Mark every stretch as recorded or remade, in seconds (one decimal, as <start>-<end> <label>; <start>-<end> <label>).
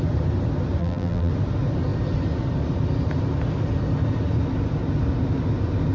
0.0-0.8 recorded; 0.8-1.3 remade; 1.3-5.9 recorded